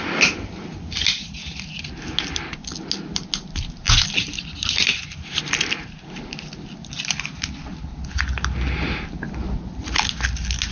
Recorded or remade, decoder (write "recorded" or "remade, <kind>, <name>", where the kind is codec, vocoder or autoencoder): recorded